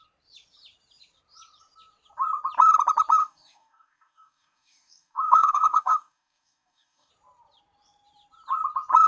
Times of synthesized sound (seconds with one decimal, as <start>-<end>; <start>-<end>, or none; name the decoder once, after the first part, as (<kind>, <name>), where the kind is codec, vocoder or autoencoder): 3.2-7.1 (codec, DAC)